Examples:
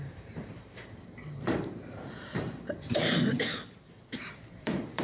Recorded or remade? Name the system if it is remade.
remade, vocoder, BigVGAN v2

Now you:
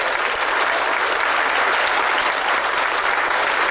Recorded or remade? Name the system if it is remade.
recorded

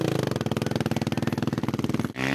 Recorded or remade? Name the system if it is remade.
recorded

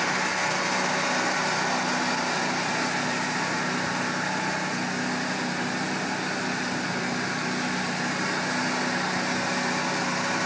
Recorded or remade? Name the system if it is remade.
recorded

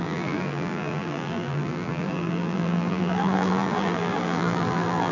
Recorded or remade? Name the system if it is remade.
remade, vocoder, BigVGAN v2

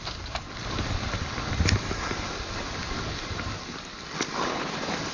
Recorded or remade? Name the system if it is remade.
recorded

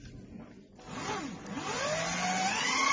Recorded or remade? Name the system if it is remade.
recorded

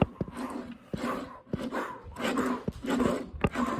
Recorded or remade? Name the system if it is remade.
recorded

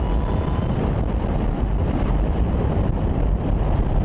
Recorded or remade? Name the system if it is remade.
remade, vocoder, BigVGAN v2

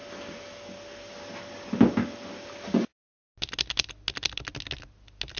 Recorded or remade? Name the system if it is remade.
recorded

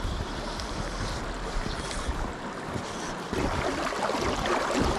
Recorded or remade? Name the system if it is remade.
recorded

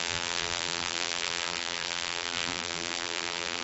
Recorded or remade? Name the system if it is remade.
remade, vocoder, BigVGAN v2